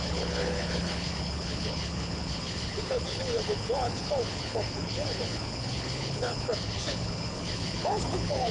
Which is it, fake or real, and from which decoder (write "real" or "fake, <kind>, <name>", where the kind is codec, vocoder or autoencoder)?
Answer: fake, codec, HILCodec